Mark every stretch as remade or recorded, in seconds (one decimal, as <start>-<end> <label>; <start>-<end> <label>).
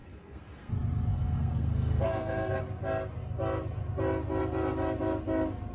0.0-0.7 remade; 0.7-1.1 recorded; 1.1-2.6 remade; 2.6-5.7 recorded